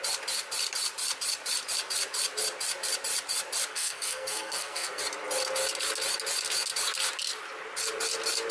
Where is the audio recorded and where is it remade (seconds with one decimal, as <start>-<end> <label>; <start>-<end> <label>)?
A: 0.0-3.7 recorded; 3.7-5.0 remade; 5.0-8.5 recorded

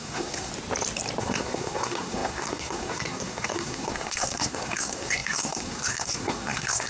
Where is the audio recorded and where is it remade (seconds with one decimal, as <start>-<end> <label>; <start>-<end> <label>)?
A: 0.0-0.5 remade; 0.5-1.2 recorded; 1.2-6.9 remade